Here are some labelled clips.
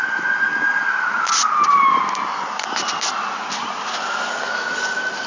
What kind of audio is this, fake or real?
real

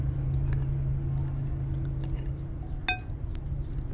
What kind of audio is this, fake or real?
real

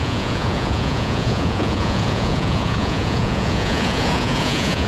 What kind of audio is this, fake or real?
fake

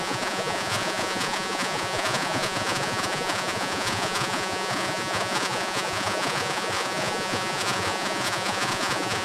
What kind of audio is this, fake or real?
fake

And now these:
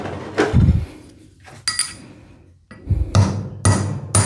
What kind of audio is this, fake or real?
real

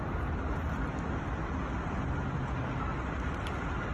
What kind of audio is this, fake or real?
real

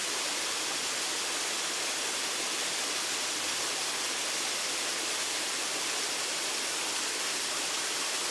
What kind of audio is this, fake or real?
real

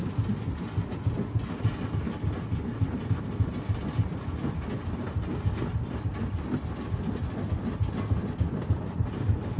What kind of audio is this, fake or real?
real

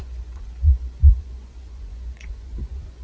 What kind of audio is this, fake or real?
fake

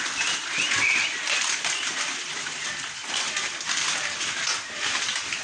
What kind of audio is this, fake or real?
real